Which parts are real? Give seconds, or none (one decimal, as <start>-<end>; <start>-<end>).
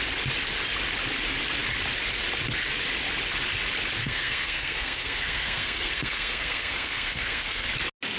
0.0-4.0; 7.7-8.2